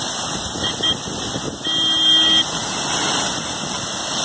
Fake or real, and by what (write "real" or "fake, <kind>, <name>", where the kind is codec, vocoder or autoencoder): real